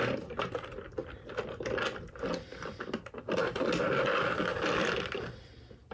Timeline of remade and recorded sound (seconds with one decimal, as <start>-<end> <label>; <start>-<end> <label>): 0.0-1.0 recorded; 1.0-1.8 remade; 1.8-2.5 recorded; 2.5-3.4 remade; 3.4-5.9 recorded